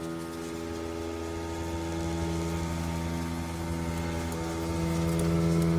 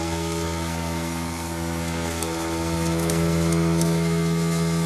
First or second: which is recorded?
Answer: first